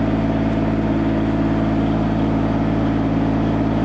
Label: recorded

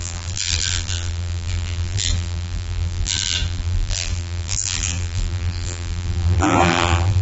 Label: remade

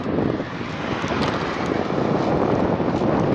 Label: recorded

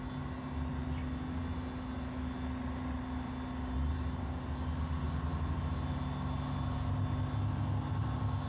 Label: recorded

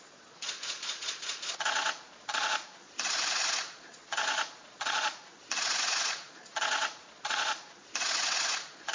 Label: remade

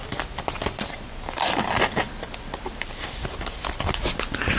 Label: recorded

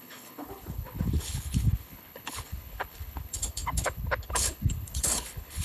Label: remade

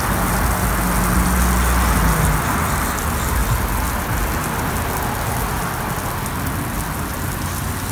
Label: recorded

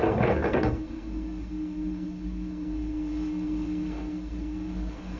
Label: remade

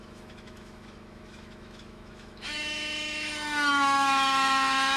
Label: remade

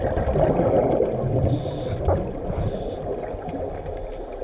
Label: recorded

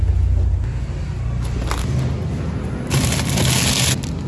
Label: recorded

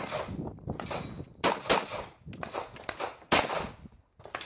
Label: recorded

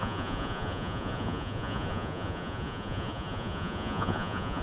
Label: remade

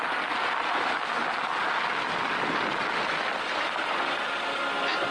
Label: recorded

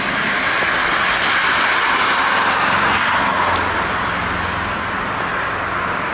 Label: recorded